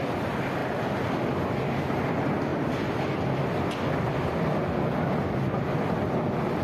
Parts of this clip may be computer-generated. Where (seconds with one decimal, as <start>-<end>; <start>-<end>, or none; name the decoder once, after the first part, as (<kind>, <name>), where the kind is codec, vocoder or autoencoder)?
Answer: none